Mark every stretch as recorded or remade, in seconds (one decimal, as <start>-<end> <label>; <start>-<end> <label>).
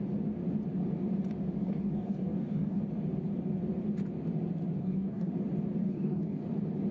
0.0-1.6 recorded; 1.6-2.8 remade; 2.8-4.8 recorded; 4.8-5.3 remade; 5.3-5.8 recorded; 5.8-6.4 remade; 6.4-6.9 recorded